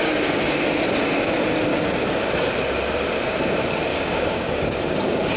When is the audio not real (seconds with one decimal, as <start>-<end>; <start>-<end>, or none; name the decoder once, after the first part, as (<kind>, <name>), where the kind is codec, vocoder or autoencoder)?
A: 0.0-0.5 (codec, DAC); 1.7-2.3; 3.9-5.4